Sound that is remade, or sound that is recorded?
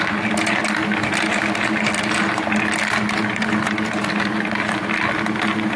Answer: recorded